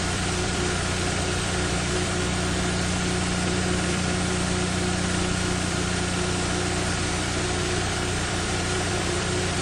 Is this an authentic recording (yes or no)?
no